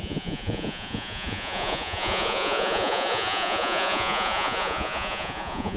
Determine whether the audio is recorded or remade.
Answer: remade